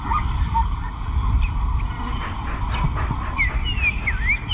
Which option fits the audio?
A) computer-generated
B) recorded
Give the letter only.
B